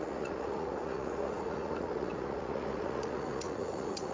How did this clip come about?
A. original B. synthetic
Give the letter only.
B